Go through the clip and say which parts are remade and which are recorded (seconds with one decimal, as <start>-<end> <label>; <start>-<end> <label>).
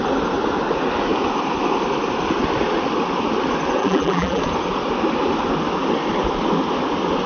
0.0-3.8 recorded; 3.8-4.4 remade; 4.4-7.3 recorded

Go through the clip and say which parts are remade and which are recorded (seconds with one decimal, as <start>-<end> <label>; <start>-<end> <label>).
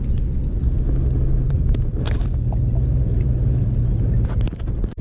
0.0-1.3 recorded; 1.3-4.3 remade; 4.3-5.0 recorded